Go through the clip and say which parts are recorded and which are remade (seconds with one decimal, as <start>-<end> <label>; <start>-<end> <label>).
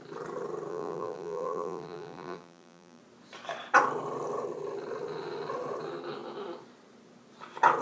0.0-0.7 recorded; 0.7-3.0 remade; 3.0-7.8 recorded